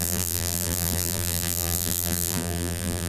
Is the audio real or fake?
fake